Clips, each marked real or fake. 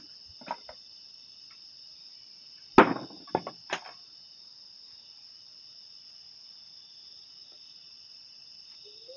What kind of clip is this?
real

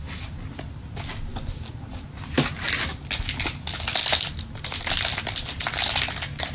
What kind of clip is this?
real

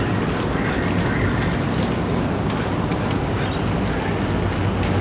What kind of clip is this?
real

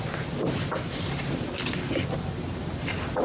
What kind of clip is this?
real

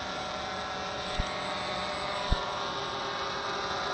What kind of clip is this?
real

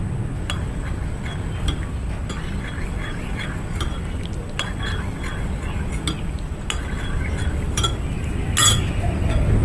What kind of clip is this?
real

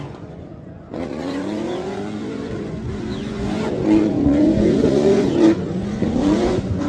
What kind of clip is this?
fake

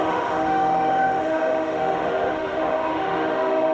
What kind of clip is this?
fake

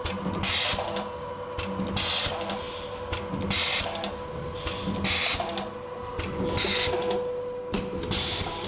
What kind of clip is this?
real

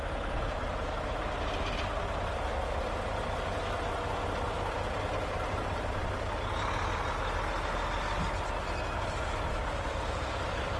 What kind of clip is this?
real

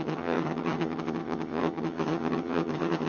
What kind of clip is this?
fake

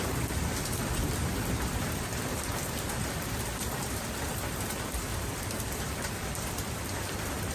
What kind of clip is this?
fake